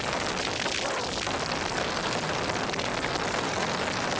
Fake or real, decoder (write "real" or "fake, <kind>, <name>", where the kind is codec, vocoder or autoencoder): real